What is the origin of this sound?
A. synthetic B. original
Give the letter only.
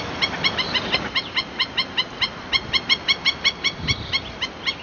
B